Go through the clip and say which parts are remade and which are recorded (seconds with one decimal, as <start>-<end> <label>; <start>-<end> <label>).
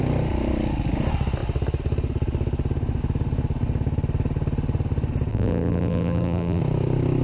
0.0-5.3 recorded; 5.3-6.6 remade; 6.6-7.2 recorded